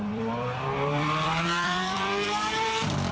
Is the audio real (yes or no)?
no